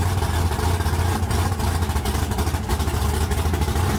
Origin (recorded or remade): recorded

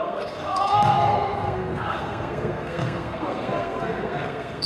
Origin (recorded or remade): remade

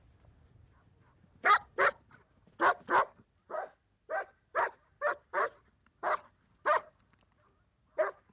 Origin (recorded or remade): recorded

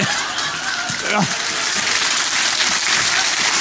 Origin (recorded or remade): recorded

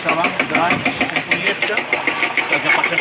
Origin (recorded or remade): recorded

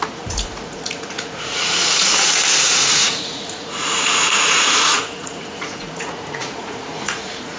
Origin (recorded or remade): remade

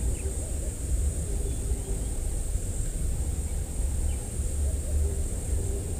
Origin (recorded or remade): recorded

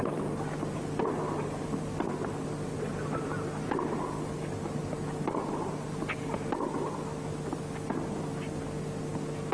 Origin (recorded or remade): recorded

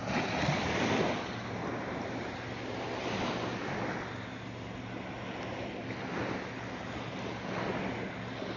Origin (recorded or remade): recorded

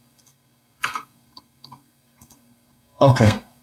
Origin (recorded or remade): remade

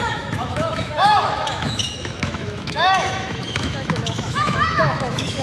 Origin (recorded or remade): remade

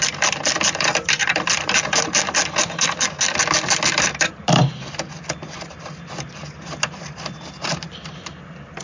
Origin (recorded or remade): recorded